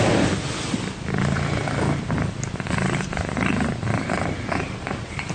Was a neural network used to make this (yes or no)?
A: no